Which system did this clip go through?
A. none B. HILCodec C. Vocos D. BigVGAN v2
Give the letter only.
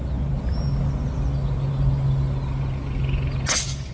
A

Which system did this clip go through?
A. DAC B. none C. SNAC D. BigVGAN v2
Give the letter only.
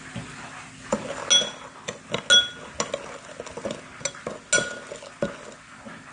B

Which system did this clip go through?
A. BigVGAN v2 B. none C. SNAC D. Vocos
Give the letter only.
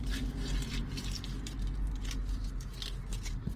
B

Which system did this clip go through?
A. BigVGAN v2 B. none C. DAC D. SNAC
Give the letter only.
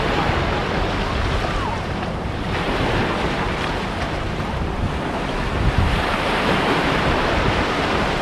A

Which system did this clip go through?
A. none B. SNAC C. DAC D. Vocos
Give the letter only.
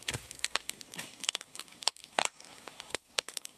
B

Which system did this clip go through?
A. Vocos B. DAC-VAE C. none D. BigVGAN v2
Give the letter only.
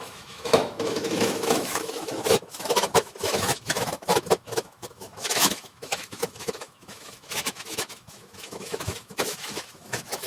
B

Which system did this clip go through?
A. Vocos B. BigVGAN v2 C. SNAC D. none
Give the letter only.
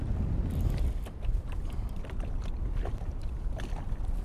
D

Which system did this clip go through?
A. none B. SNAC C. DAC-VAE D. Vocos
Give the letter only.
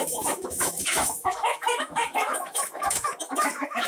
C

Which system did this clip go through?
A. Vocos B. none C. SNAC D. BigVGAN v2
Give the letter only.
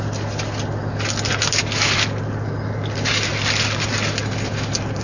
B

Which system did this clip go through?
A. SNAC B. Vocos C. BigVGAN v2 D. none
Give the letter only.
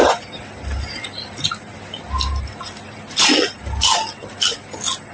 D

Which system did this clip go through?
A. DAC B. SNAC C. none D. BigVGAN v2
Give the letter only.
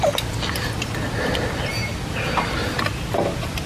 C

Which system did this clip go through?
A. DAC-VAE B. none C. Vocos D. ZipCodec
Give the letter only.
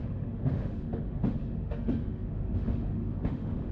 A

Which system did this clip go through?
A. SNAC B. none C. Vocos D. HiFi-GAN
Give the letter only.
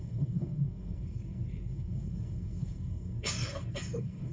A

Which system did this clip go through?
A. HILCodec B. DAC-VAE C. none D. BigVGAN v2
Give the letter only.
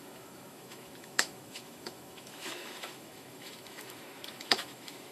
B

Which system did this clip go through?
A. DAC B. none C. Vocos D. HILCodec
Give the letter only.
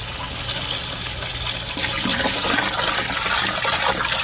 B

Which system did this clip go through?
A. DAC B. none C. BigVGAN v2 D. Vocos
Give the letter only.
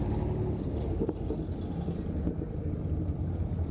B